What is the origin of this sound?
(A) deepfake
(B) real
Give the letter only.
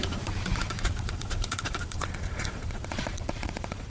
A